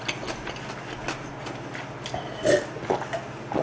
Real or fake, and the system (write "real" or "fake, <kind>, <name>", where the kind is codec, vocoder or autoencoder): real